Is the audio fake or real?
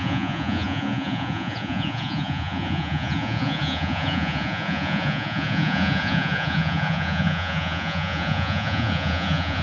fake